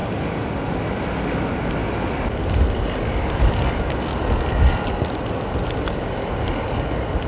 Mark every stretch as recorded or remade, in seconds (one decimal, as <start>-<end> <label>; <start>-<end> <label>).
0.0-7.3 recorded